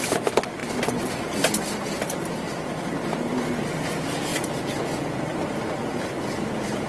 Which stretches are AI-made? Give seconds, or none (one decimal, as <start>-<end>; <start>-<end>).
0.0-0.6; 3.6-4.3; 5.5-6.9